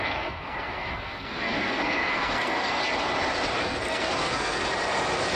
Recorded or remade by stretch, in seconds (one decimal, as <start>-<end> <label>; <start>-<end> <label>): 0.0-2.8 remade; 2.8-3.6 recorded; 3.6-4.6 remade; 4.6-5.4 recorded